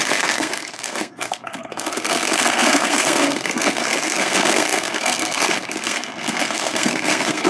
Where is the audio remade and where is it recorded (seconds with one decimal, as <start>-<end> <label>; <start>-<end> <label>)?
0.0-7.5 remade